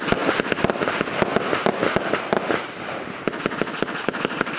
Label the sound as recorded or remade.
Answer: recorded